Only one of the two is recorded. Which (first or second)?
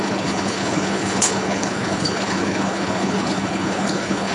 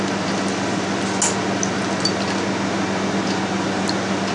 second